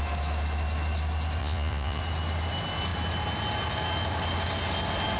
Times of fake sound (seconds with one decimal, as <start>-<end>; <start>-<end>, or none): 1.4-2.0